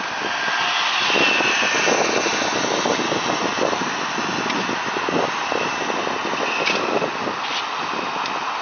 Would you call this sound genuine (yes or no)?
yes